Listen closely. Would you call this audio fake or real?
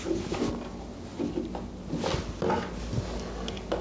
real